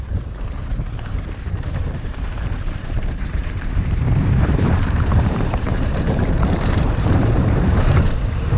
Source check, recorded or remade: remade